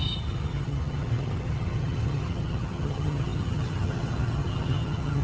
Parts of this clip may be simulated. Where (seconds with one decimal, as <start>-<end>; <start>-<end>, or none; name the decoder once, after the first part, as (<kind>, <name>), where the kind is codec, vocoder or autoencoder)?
0.0-5.2 (vocoder, HiFi-GAN)